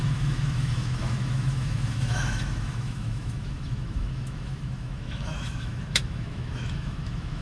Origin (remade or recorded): remade